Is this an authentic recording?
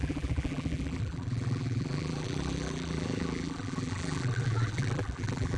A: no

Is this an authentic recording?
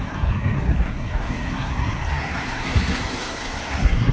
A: no